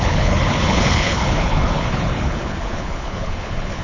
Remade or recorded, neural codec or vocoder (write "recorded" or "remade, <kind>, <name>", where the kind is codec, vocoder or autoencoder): remade, codec, HILCodec